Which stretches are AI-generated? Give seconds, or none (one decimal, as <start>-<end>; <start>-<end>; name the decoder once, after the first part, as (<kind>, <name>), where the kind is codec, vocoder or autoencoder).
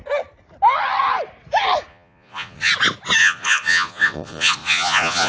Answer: 1.9-2.7 (vocoder, Vocos); 3.2-5.3